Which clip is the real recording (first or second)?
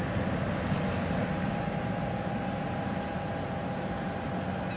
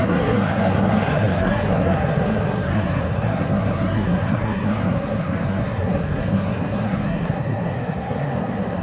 first